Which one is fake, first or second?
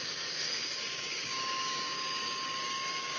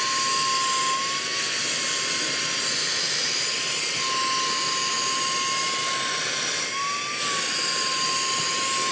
first